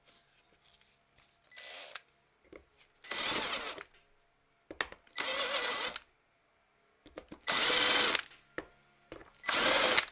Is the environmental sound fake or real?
real